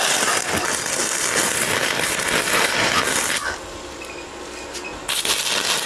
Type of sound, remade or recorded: recorded